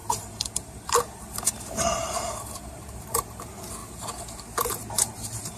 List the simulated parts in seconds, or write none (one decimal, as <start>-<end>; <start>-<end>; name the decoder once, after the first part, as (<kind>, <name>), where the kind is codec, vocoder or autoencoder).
0.0-3.4 (vocoder, BigVGAN v2); 3.8-5.6